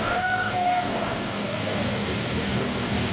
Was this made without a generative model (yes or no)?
no